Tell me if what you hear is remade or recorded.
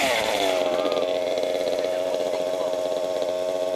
remade